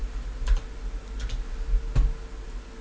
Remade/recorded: recorded